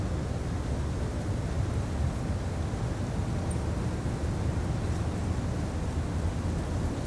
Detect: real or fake real